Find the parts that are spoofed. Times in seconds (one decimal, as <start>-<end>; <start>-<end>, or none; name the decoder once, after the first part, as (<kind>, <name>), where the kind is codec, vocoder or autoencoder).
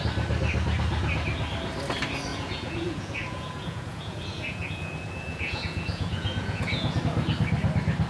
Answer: 2.3-7.0 (vocoder, Vocos)